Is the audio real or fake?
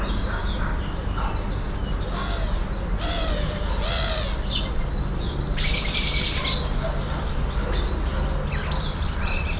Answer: real